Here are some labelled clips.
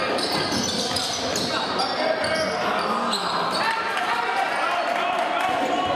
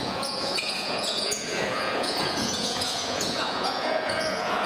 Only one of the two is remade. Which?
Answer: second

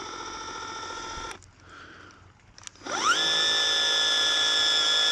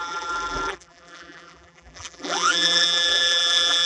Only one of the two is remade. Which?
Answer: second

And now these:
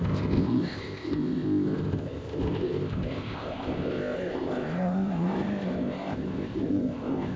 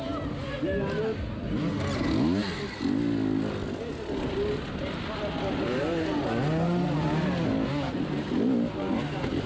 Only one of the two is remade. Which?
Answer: first